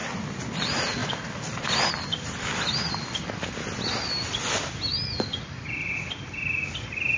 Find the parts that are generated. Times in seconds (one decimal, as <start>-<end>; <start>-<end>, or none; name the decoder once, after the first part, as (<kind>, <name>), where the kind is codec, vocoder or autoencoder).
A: 1.0-1.9 (vocoder, BigVGAN v2)

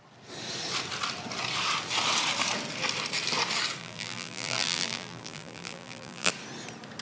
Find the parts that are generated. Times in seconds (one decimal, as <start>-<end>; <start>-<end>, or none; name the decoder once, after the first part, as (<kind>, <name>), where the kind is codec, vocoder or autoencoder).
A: 3.8-6.3 (vocoder, BigVGAN v2)